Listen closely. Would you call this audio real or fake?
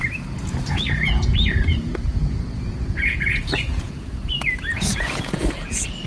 fake